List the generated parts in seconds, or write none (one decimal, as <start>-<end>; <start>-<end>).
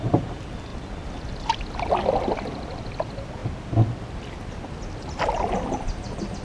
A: none